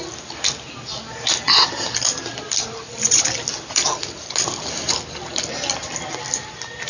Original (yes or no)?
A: yes